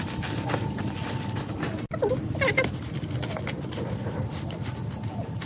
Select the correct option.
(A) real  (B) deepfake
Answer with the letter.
A